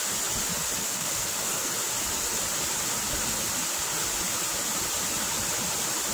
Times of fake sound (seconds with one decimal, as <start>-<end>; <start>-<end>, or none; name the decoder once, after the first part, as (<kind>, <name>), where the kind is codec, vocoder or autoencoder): 0.8-1.7 (codec, SNAC)